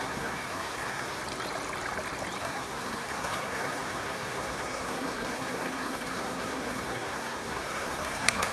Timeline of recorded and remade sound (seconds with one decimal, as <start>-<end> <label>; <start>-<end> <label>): 0.0-1.2 remade; 1.2-2.4 recorded; 2.4-8.5 remade